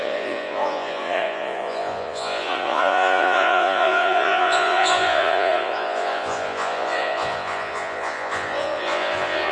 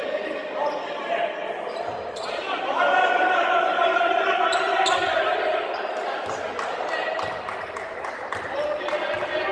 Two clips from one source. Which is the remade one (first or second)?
first